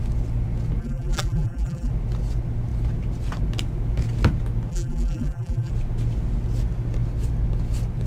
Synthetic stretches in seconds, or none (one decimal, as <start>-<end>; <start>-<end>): 0.8-1.9; 4.7-5.7